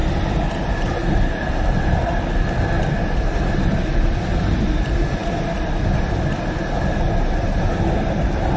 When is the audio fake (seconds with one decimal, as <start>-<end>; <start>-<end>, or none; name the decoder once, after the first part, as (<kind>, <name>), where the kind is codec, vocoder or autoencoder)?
none